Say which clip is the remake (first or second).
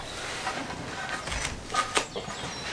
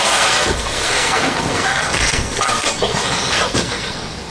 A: second